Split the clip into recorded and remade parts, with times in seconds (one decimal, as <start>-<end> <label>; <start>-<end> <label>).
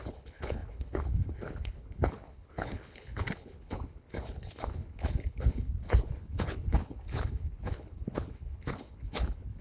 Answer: 0.0-9.6 remade